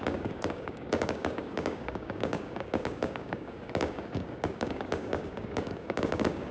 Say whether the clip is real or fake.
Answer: fake